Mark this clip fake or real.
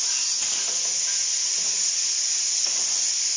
real